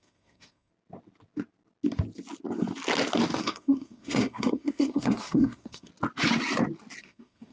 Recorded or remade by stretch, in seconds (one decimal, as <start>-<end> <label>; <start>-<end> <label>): 0.0-0.7 remade; 0.7-3.4 recorded; 3.4-5.9 remade; 5.9-7.0 recorded; 7.0-7.5 remade